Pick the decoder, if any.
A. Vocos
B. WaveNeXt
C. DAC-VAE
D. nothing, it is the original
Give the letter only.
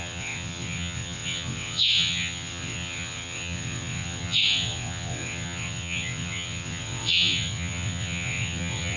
B